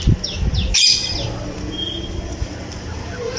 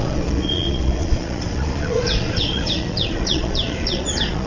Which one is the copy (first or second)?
second